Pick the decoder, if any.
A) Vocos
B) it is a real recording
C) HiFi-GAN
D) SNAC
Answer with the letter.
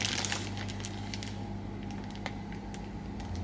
B